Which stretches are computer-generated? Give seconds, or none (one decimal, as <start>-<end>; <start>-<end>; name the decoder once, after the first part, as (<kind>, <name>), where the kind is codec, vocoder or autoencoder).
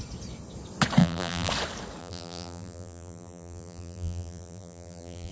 1.0-1.5 (vocoder, BigVGAN v2); 2.0-5.3